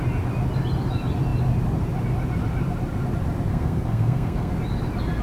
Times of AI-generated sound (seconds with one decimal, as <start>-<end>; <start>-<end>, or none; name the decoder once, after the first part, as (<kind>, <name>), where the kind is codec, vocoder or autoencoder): 3.5-4.5 (codec, SNAC)